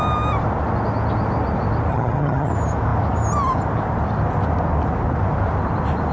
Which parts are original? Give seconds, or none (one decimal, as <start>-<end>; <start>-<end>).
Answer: 0.0-1.9; 2.5-6.1